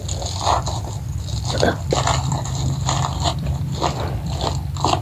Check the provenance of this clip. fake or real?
real